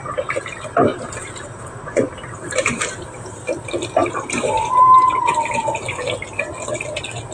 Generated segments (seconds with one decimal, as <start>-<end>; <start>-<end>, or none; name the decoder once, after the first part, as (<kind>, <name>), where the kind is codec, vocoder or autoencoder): 0.9-3.4 (vocoder, BigVGAN v2); 4.0-5.0